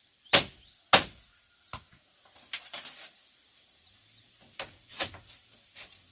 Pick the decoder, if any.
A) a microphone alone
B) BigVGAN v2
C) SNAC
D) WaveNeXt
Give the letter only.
A